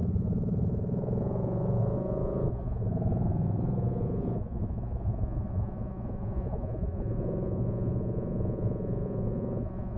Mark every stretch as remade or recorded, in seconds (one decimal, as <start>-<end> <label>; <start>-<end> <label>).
0.0-10.0 remade